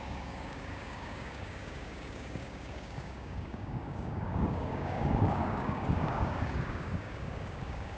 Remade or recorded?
remade